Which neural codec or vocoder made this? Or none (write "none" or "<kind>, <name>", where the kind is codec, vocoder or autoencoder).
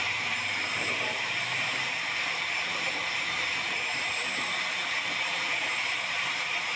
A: vocoder, BigVGAN v2